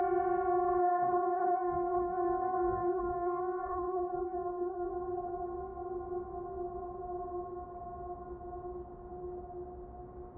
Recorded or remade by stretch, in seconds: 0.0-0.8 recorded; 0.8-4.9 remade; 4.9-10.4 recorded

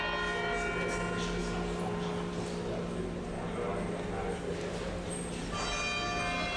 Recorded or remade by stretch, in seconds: 0.0-6.6 recorded

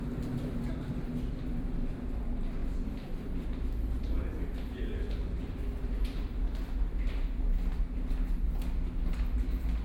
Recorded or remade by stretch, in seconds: 0.0-2.6 recorded; 2.6-6.5 remade; 6.5-9.8 recorded

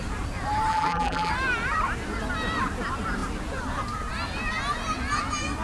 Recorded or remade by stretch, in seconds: 0.0-0.7 recorded; 0.7-1.3 remade; 1.3-5.6 recorded

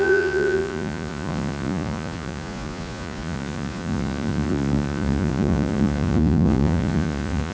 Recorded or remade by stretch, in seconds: 0.0-7.5 remade

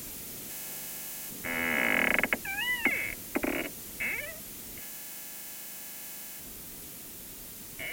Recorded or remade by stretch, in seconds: 0.0-0.5 recorded; 0.5-1.3 remade; 1.3-4.8 recorded; 4.8-6.4 remade; 6.4-7.9 recorded